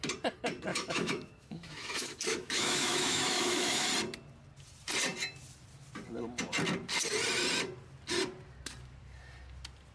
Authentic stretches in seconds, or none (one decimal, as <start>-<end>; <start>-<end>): 0.0-0.7; 3.9-9.9